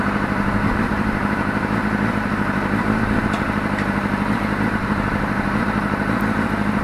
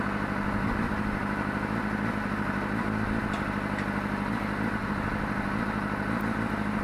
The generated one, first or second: first